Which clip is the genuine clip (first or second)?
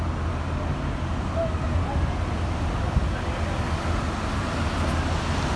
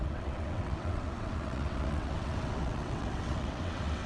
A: first